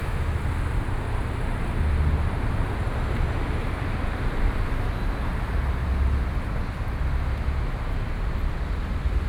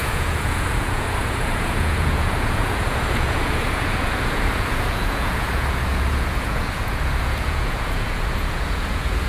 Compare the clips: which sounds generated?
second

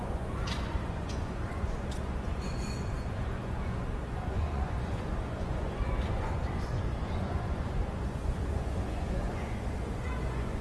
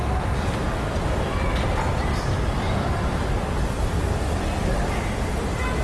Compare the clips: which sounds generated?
first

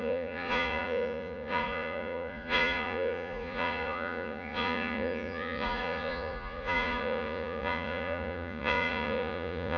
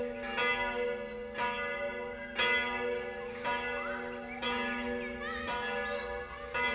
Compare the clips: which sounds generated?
first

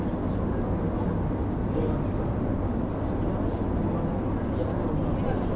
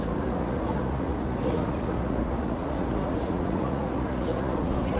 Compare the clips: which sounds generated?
second